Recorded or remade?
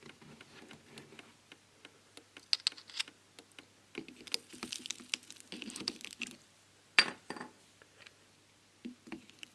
recorded